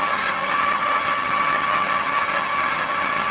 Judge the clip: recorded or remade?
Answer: remade